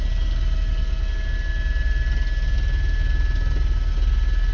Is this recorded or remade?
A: recorded